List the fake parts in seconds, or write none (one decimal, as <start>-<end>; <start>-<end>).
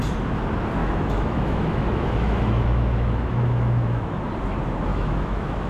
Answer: 0.8-4.2; 4.9-5.7